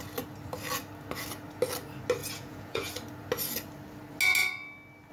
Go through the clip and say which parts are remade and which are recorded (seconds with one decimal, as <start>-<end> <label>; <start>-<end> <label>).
0.0-2.2 recorded; 2.2-2.9 remade; 2.9-5.1 recorded